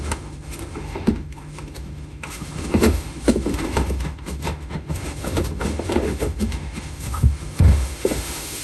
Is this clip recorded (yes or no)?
no